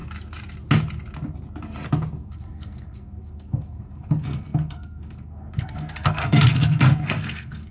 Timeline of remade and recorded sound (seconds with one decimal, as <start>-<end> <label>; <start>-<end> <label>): 0.0-2.1 recorded; 2.1-7.7 remade